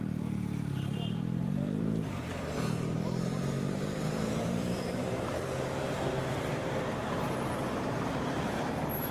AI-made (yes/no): yes